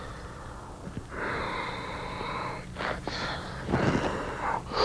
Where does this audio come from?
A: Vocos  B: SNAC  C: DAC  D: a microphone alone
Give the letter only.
D